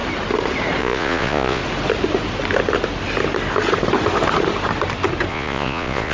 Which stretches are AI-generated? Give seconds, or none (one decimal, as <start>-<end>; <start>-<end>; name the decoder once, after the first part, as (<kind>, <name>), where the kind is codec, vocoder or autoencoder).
0.8-1.6 (vocoder, Vocos); 5.3-6.1